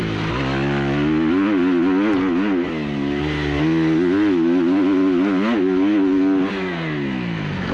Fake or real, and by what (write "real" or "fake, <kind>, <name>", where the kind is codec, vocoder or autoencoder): real